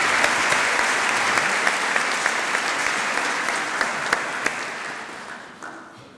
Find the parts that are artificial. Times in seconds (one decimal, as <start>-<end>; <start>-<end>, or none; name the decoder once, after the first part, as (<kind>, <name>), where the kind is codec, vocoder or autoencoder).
0.4-1.1 (vocoder, Vocos); 2.7-4.0